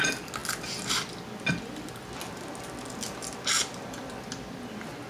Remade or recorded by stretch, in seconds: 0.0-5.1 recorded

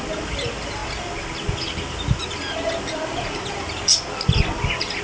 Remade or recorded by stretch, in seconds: 0.0-5.0 recorded

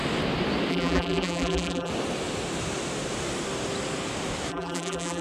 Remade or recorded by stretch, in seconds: 0.0-0.7 recorded; 0.7-1.9 remade; 1.9-4.5 recorded; 4.5-5.2 remade

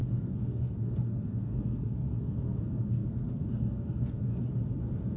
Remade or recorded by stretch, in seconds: 0.0-4.3 remade; 4.3-4.8 recorded; 4.8-5.2 remade

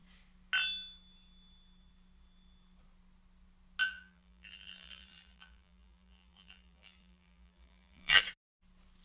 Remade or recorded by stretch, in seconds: 0.0-3.8 recorded; 3.8-8.2 remade; 8.2-9.0 recorded

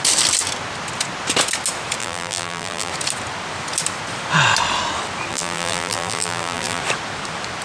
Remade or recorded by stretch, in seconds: 0.0-2.0 recorded; 2.0-2.9 remade; 2.9-5.3 recorded; 5.3-6.8 remade; 6.8-7.6 recorded

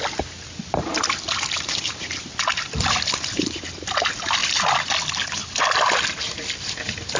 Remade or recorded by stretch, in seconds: 0.0-7.2 recorded